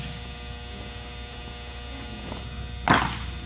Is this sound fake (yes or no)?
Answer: no